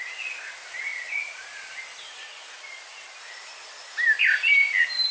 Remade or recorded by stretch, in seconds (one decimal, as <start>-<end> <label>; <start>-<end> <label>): 0.0-0.9 recorded; 0.9-3.2 remade; 3.2-5.1 recorded